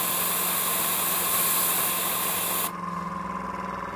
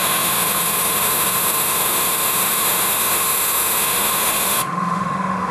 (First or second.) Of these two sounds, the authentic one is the first